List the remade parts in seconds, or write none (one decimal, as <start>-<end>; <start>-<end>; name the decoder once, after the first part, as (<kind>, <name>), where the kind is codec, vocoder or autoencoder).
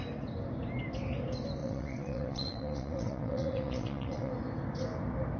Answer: 1.6-4.3 (vocoder, WaveNeXt)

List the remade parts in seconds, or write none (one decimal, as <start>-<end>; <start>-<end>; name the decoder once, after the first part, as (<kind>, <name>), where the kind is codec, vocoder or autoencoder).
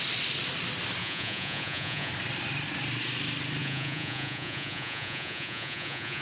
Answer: 1.0-2.1 (vocoder, Vocos); 3.6-6.2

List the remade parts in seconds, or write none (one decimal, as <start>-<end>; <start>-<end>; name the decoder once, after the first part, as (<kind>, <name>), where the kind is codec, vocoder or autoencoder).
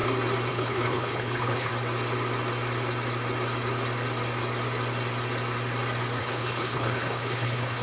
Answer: 0.5-1.7 (codec, HILCodec); 6.2-7.8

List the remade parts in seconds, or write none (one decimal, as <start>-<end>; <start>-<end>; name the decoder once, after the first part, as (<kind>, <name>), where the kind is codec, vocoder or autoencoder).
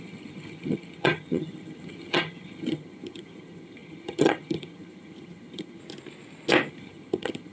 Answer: 0.0-5.8 (vocoder, HiFi-GAN); 6.7-7.5